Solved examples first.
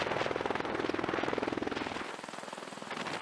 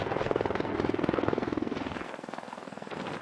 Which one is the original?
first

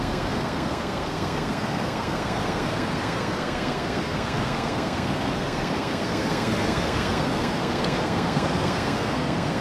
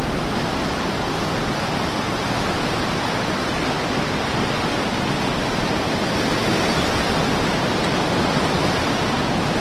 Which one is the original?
second